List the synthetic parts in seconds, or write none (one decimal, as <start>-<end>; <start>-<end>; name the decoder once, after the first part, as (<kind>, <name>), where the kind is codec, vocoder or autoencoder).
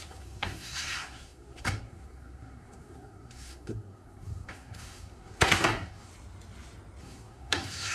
0.0-6.1 (codec, SNAC); 7.0-7.9